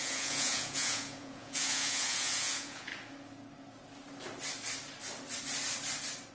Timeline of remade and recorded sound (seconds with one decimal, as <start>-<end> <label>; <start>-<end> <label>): 0.0-2.9 remade; 2.9-6.3 recorded